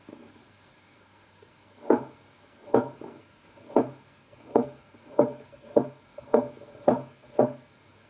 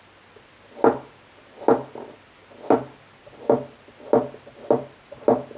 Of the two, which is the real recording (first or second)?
second